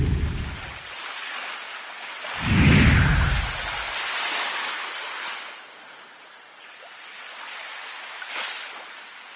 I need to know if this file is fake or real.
real